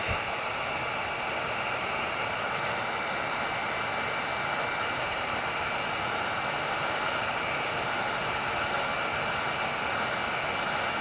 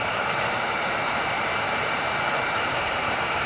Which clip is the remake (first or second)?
second